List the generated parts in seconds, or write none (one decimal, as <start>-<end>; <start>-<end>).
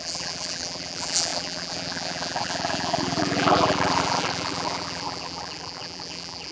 0.0-6.5